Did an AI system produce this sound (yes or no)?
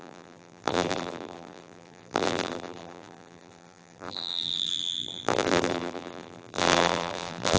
yes